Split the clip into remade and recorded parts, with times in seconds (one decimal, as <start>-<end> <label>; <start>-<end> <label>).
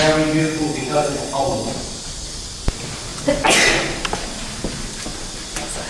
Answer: 0.0-0.4 recorded; 0.4-1.7 remade; 1.7-5.9 recorded